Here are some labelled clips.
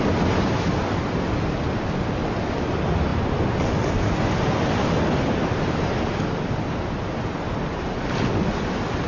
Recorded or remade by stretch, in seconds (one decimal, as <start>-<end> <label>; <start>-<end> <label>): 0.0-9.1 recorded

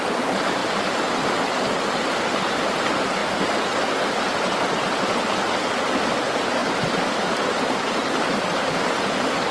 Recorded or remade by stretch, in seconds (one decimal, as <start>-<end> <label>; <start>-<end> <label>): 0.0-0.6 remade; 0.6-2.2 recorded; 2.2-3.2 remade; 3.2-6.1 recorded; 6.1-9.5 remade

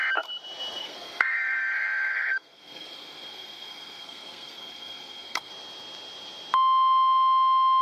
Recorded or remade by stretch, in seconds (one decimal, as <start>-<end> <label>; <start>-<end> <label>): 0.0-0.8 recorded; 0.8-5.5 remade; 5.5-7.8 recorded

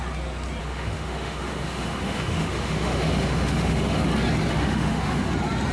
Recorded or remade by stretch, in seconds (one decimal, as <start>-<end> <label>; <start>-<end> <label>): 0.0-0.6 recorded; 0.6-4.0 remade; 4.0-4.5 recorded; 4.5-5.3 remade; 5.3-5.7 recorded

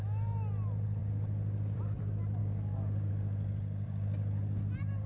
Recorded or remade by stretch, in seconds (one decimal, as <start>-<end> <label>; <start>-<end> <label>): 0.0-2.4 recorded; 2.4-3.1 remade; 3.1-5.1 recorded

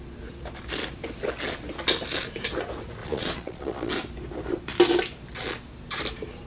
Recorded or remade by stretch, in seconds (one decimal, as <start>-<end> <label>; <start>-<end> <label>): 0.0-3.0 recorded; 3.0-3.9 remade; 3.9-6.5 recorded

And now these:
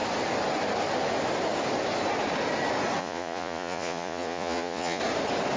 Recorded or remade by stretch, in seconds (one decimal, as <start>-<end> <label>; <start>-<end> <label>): 0.0-3.0 recorded; 3.0-5.0 remade; 5.0-5.6 recorded